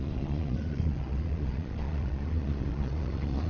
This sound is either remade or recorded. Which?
remade